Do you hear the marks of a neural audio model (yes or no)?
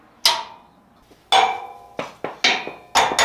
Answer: no